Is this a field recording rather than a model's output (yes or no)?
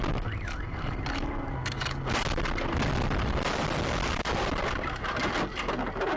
yes